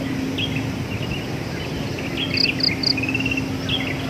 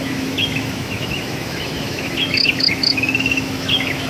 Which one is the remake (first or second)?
second